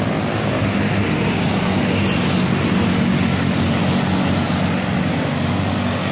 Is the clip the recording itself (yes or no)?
yes